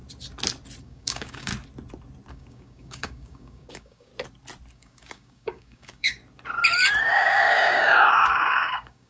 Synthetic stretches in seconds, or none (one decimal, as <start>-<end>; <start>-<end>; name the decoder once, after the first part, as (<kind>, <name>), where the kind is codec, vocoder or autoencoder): 0.8-1.5 (codec, DAC); 2.3-4.1; 4.7-6.2; 7.0-9.1

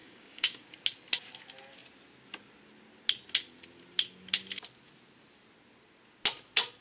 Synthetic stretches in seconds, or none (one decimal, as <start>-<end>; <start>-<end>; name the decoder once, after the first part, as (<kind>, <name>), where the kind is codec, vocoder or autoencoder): 0.0-0.6 (codec, DAC)

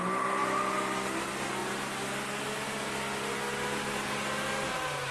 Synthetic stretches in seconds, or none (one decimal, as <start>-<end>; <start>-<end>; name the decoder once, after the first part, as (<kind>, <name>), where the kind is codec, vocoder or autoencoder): none

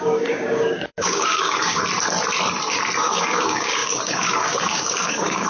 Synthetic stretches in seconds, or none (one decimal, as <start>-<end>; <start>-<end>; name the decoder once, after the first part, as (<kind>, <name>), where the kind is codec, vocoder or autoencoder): 0.0-1.8 (codec, DAC); 3.0-5.5

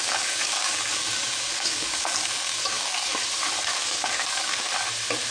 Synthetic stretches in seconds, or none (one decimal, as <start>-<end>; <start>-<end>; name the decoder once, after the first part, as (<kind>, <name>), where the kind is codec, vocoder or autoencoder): 0.0-3.2 (codec, DAC); 3.7-4.7

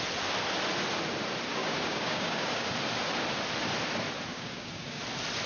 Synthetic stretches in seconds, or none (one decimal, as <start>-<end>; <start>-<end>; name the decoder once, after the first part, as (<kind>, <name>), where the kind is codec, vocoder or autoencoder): 1.6-2.7 (codec, DAC); 4.3-5.0

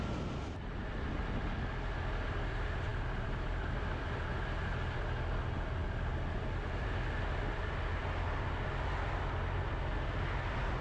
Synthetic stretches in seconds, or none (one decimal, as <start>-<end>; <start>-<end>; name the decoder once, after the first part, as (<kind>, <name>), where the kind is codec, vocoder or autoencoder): none